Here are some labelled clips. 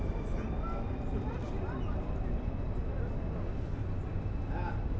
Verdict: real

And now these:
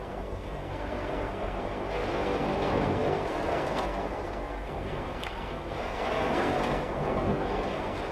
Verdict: fake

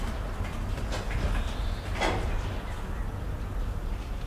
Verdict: real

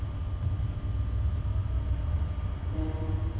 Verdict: real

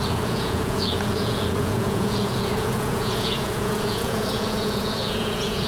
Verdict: fake